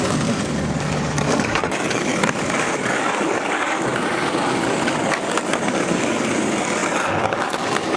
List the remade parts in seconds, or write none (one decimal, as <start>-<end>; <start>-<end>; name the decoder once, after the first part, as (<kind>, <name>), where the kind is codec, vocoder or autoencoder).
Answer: 0.0-8.0 (codec, DAC)